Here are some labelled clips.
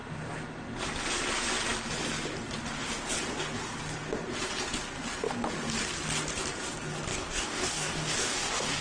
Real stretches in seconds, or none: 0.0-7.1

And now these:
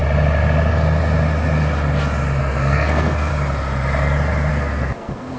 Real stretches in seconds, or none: 0.0-2.4; 3.3-4.5

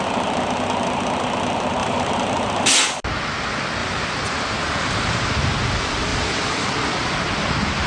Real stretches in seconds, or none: 0.0-1.8; 2.7-3.8; 5.3-6.1; 6.7-7.9

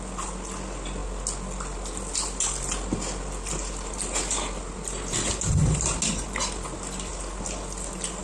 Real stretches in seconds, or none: 0.0-8.2